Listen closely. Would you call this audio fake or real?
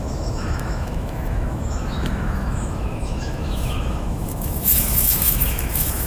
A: fake